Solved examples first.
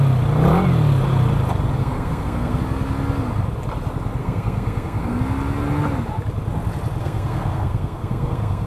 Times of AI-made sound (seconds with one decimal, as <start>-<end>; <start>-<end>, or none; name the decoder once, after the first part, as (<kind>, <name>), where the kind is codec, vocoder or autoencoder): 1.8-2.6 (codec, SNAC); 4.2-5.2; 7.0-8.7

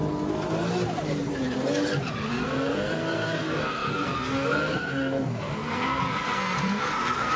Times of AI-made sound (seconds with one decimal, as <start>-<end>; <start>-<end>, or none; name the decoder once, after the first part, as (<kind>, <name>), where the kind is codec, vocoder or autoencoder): 2.3-7.4 (codec, SNAC)

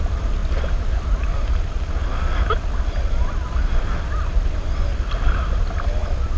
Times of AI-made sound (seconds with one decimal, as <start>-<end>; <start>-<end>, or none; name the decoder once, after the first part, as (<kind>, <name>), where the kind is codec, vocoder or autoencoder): none